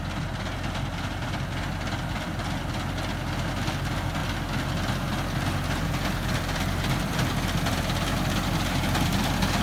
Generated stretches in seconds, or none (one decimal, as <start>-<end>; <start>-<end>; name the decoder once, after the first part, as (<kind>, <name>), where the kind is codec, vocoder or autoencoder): none